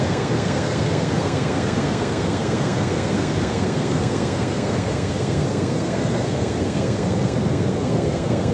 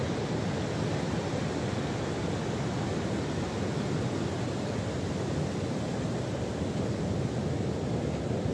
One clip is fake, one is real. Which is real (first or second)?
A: second